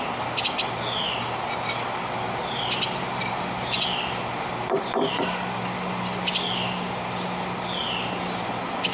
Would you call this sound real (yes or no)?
yes